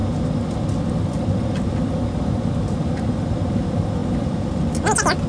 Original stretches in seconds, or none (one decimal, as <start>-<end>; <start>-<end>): 0.0-5.3